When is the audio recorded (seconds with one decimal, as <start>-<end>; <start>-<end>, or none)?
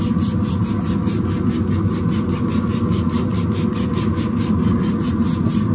0.0-5.7